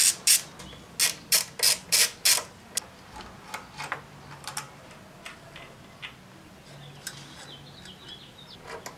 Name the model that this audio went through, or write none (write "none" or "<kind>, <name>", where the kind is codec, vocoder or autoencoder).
none